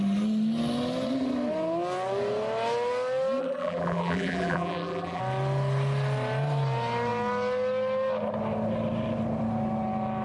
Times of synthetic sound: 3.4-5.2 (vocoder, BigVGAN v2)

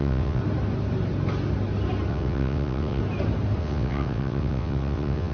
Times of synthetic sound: 0.0-0.4 (vocoder, WaveNeXt); 2.1-3.0; 3.6-5.3

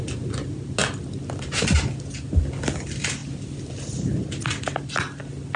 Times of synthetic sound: none